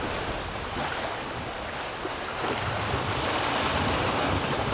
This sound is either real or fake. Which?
real